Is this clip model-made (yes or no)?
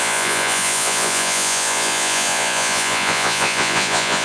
yes